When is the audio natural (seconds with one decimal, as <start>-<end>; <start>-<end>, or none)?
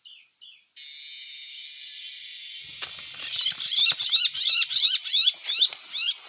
0.0-6.3